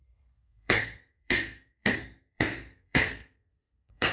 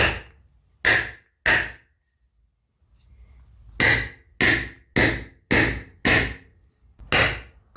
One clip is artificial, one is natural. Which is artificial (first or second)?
first